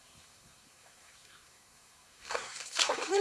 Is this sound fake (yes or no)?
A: yes